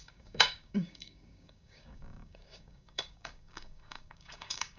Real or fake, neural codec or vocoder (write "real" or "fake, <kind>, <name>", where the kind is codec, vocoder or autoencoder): fake, codec, DAC